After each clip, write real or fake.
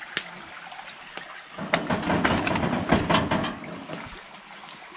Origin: real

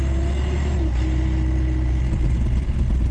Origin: real